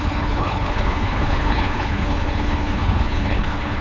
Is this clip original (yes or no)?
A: no